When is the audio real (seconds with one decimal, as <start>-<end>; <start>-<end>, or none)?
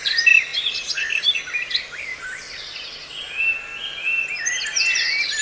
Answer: 0.0-5.4